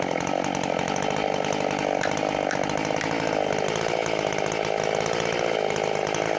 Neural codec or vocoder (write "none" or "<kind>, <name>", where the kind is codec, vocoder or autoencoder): none